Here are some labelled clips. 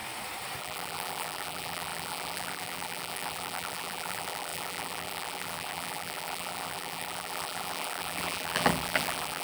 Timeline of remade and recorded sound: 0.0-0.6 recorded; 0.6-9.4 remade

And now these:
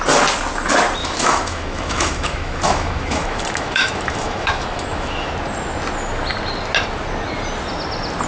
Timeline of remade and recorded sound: 0.0-1.0 recorded; 1.0-5.3 remade; 5.3-8.3 recorded

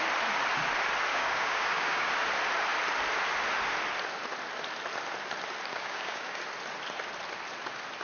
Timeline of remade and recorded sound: 0.0-1.1 recorded; 1.1-2.1 remade; 2.1-5.7 recorded; 5.7-6.4 remade; 6.4-8.0 recorded

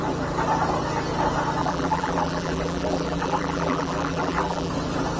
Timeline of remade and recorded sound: 0.0-1.6 recorded; 1.6-4.7 remade; 4.7-5.2 recorded

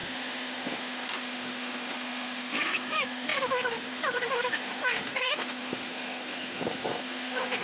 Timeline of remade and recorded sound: 0.0-7.6 remade